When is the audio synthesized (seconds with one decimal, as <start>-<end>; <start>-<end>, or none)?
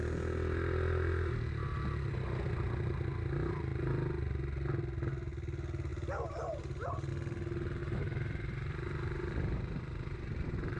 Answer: 5.9-7.1; 7.8-10.8